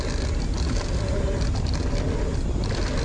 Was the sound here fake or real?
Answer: real